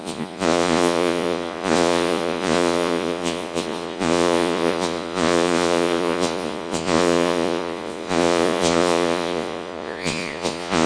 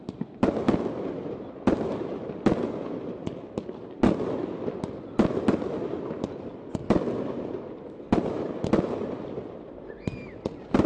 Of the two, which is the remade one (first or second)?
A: first